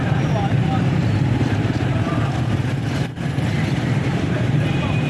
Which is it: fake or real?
fake